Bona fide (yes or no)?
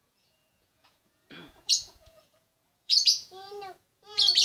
no